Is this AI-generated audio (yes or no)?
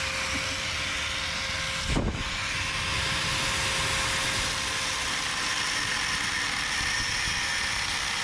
no